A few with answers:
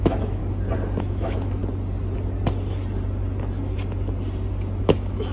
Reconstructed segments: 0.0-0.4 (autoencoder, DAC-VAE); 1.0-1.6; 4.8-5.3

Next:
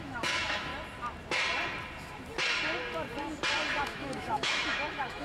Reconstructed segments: 0.0-0.7 (autoencoder, DAC-VAE); 3.8-5.2

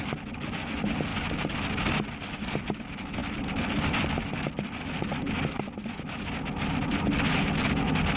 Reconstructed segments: none

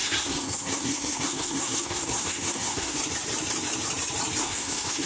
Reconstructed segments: 0.0-3.0 (codec, SNAC); 4.4-5.1

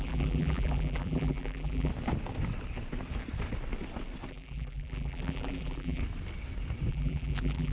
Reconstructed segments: 0.0-1.9 (vocoder, BigVGAN v2); 4.3-6.0; 6.9-7.7

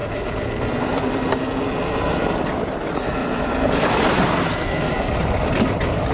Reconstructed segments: 0.0-1.1 (vocoder, BigVGAN v2); 3.2-6.1

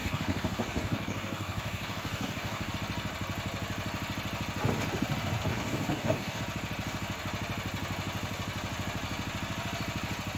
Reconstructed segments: 0.0-2.7 (codec, DAC); 5.5-6.4

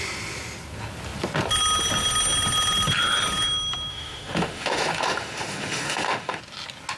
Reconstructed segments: 3.9-6.4 (autoencoder, DAC-VAE)